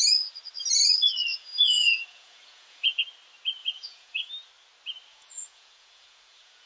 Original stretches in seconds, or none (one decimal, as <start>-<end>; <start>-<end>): 0.0-1.3; 3.0-3.6; 4.3-5.1